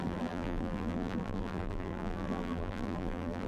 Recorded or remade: remade